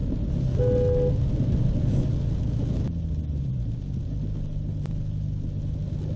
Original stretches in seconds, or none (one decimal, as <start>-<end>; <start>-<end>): 0.0-6.2